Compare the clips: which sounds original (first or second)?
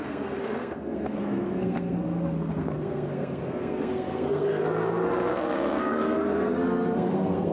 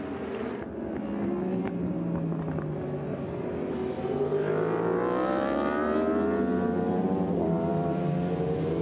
second